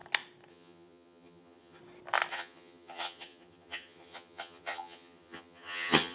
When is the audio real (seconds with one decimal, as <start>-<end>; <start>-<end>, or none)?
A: 0.0-0.5; 1.8-2.3